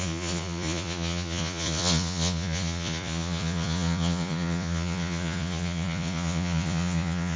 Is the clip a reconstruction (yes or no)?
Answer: yes